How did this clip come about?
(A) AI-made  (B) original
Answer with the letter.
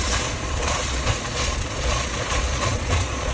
A